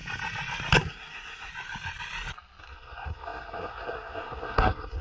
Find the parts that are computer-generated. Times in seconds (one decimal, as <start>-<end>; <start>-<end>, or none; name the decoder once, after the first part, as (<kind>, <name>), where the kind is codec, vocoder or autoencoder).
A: 0.8-1.5 (codec, SNAC); 2.6-5.0